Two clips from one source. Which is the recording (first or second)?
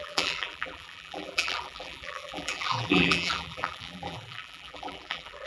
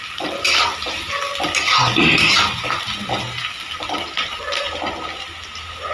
second